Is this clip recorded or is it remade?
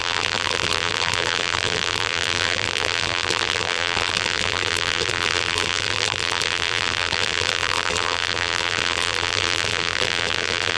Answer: remade